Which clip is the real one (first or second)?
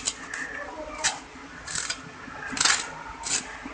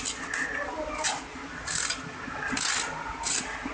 second